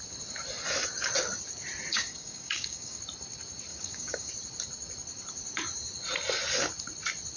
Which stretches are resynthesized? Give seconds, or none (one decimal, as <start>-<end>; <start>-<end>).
1.9-3.0; 3.7-4.3